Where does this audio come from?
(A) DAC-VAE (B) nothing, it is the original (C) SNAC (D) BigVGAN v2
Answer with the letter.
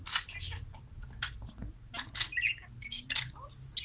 B